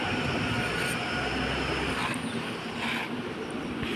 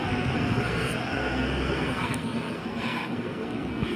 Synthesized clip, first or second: second